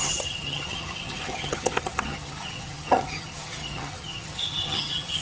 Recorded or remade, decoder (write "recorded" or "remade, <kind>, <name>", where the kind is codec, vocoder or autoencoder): remade, vocoder, HiFi-GAN